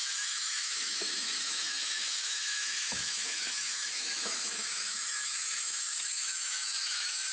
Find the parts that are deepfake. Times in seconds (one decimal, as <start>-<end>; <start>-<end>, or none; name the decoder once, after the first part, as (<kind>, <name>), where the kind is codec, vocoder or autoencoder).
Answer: 0.0-7.3 (autoencoder, DAC-VAE)